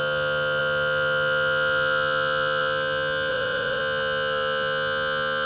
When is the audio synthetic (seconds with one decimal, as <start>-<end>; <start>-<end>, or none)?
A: 3.3-3.8